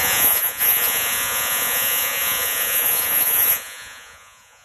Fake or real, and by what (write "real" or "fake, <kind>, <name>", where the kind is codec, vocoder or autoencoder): fake, vocoder, Vocos